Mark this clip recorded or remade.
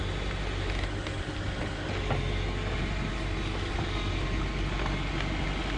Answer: recorded